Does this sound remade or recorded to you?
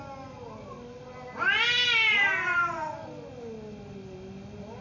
recorded